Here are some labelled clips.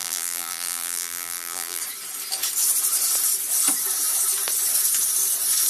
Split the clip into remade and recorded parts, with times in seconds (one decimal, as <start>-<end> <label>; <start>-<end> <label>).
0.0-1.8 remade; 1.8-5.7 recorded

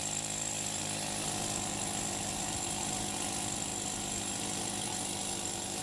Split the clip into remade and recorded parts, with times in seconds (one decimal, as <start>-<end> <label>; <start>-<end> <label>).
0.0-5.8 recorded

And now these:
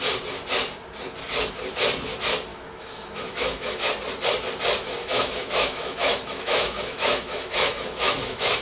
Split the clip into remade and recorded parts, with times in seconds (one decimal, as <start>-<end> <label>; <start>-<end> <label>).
0.0-2.5 recorded; 2.5-3.9 remade; 3.9-5.0 recorded; 5.0-8.6 remade

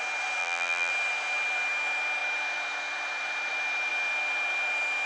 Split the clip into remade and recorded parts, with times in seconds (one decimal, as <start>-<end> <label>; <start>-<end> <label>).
0.0-0.4 recorded; 0.4-0.9 remade; 0.9-5.1 recorded

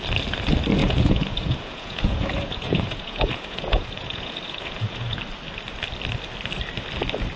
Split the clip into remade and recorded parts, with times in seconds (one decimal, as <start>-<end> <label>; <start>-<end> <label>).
0.0-0.8 recorded; 0.8-5.2 remade; 5.2-7.4 recorded

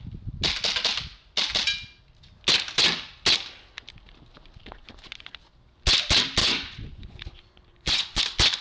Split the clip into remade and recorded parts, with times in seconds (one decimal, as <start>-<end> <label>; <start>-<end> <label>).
0.0-6.4 recorded; 6.4-8.2 remade; 8.2-8.6 recorded

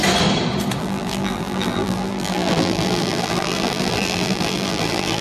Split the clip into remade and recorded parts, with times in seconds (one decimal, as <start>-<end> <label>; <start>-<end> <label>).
0.0-0.8 recorded; 0.8-5.2 remade

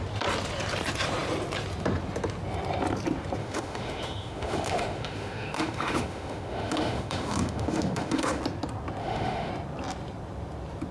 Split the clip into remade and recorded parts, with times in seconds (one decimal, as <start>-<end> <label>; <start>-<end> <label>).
0.0-3.4 recorded; 3.4-8.4 remade; 8.4-9.0 recorded; 9.0-9.5 remade; 9.5-10.9 recorded